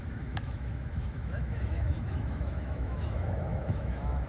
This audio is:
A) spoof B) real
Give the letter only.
A